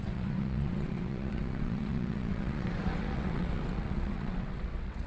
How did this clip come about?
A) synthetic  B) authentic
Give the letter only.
A